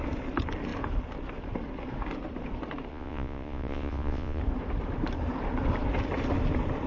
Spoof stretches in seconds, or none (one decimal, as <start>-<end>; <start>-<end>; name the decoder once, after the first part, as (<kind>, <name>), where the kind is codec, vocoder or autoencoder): 2.9-4.4 (vocoder, Vocos)